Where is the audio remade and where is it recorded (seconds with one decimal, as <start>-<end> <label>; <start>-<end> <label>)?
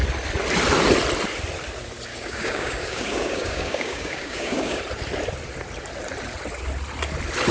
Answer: 0.0-2.1 recorded; 2.1-4.8 remade; 4.8-7.5 recorded